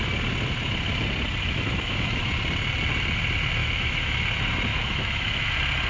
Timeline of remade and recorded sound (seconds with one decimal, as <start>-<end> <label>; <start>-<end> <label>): 0.0-1.4 recorded; 1.4-2.2 remade; 2.2-3.6 recorded; 3.6-4.1 remade; 4.1-4.7 recorded; 4.7-5.5 remade; 5.5-5.9 recorded